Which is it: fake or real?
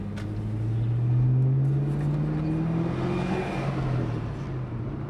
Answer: real